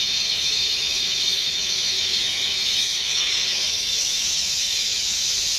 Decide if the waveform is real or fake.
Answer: fake